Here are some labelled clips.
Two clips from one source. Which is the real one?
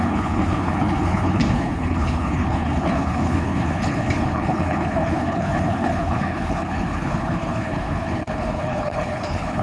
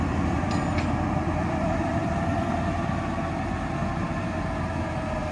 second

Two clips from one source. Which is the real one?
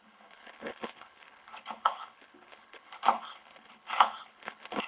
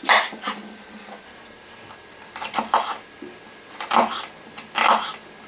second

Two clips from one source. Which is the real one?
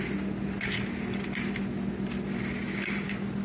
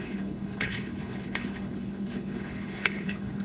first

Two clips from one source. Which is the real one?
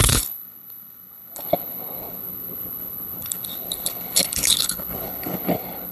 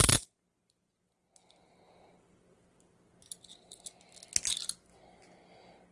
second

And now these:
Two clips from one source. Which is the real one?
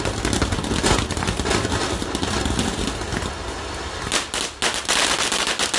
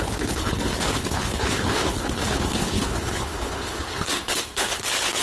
first